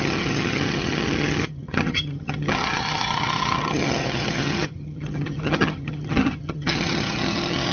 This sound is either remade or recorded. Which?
remade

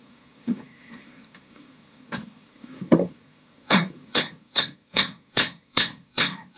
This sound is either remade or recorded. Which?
remade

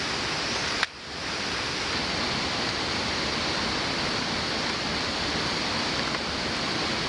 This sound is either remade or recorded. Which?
recorded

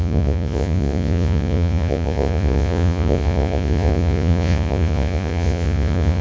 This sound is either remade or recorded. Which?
remade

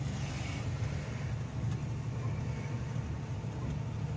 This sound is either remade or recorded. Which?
recorded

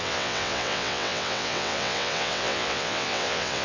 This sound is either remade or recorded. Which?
remade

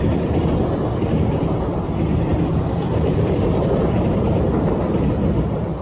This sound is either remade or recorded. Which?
remade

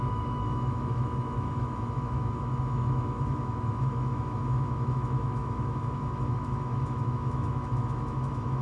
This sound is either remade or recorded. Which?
remade